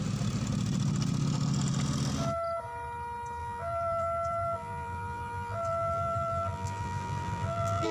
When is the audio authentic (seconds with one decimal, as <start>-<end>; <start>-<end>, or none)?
0.0-3.4